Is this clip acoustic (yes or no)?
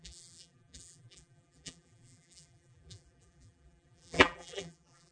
no